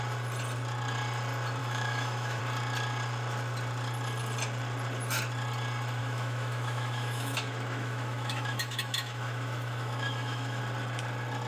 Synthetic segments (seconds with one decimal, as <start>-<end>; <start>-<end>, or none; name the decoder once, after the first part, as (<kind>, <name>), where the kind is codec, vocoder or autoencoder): 1.6-2.4 (autoencoder, DAC-VAE); 6.0-10.6